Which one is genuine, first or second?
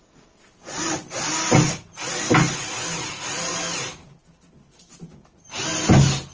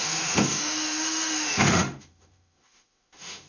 first